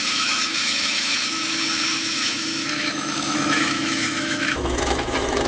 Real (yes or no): no